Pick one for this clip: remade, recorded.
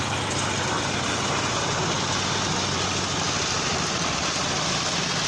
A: recorded